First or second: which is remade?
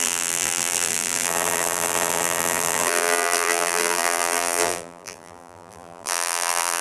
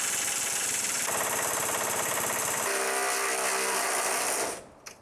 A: first